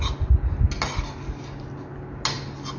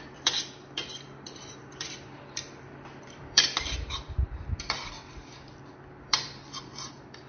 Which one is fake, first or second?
second